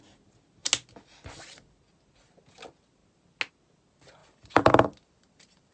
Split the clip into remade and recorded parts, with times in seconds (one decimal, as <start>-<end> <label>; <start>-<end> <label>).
0.0-4.2 recorded; 4.2-5.7 remade